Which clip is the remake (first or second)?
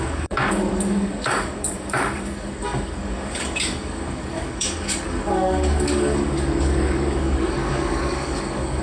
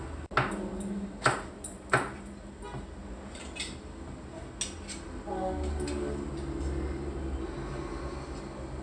first